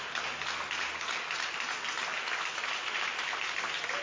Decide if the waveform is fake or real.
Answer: real